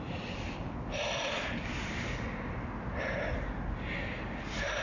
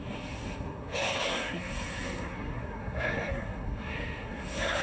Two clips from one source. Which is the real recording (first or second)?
first